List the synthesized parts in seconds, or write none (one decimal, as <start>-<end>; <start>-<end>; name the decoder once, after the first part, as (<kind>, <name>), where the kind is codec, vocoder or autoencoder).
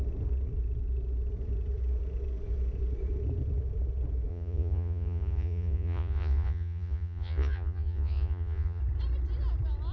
4.3-8.8 (vocoder, Vocos)